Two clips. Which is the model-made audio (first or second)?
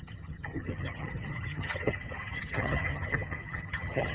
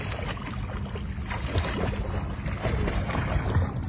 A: first